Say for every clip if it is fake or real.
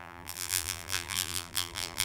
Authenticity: fake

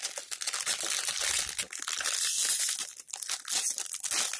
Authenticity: real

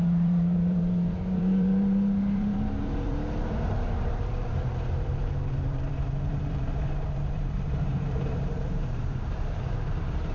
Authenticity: fake